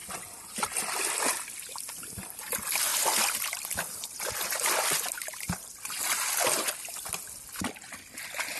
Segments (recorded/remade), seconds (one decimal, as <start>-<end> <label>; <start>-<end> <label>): 0.0-8.6 recorded